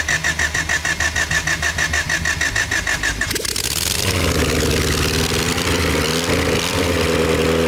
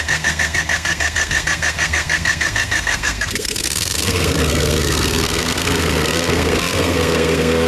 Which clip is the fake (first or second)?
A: second